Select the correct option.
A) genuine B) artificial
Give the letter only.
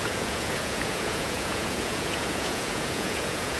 B